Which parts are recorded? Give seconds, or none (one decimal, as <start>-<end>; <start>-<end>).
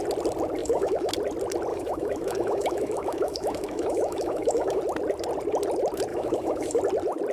0.0-0.6; 1.1-1.7; 4.8-6.1; 6.8-7.3